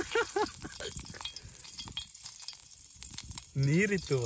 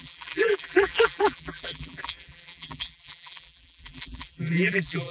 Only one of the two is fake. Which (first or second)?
second